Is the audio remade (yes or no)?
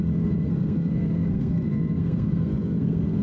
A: yes